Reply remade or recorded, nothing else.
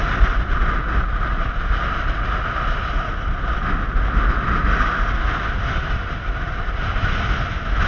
recorded